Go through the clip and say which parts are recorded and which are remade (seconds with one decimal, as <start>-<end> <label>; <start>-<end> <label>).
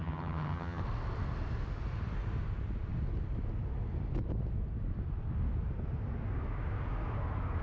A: 0.0-0.8 remade; 0.8-7.6 recorded